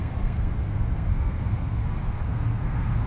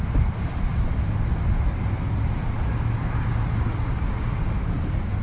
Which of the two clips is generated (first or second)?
first